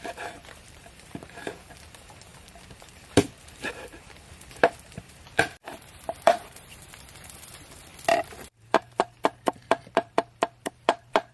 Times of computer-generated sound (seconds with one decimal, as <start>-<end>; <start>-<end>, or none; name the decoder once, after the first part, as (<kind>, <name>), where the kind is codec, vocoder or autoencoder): 0.0-7.9 (vocoder, BigVGAN v2); 8.5-11.3